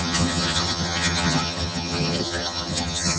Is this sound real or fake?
fake